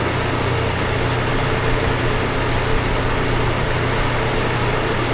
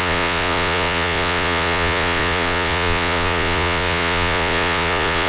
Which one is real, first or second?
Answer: first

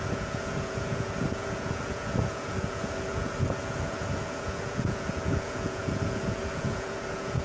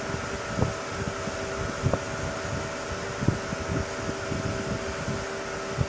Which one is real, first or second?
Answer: second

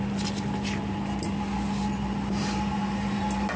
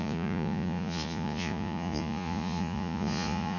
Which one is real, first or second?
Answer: first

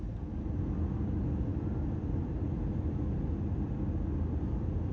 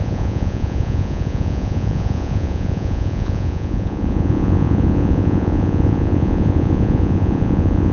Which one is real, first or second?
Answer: first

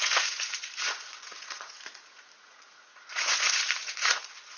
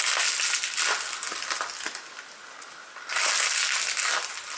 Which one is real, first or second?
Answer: second